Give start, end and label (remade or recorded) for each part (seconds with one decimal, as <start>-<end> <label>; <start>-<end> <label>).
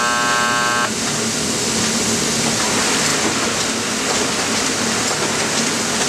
0.0-6.1 recorded